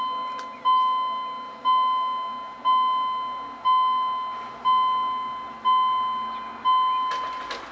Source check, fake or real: real